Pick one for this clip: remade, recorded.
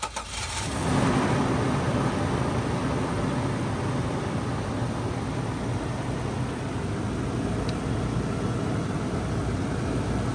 recorded